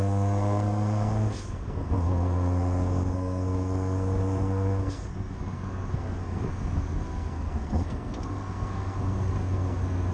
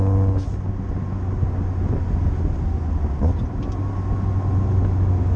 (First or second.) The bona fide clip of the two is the second